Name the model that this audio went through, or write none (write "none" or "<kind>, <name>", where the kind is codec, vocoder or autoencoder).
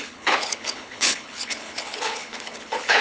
codec, HILCodec